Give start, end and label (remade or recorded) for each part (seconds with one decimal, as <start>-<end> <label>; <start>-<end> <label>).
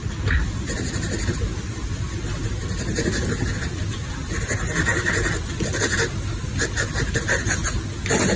0.0-8.4 recorded